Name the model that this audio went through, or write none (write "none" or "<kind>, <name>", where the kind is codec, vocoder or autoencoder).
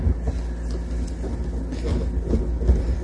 none